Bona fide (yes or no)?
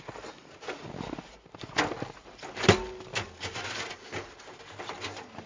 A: yes